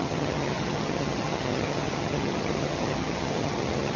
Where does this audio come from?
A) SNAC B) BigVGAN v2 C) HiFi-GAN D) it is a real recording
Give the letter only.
C